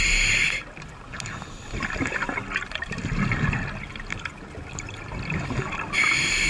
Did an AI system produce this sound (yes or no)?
no